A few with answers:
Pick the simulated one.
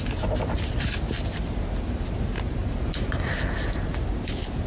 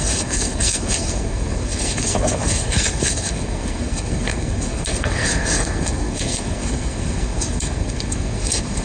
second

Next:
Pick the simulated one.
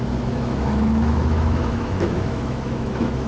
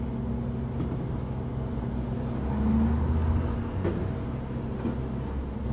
first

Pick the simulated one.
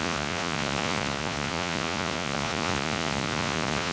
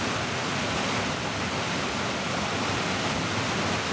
first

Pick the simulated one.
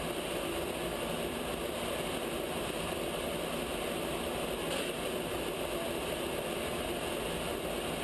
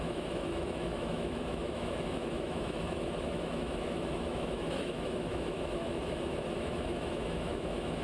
second